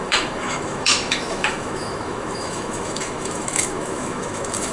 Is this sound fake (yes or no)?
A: yes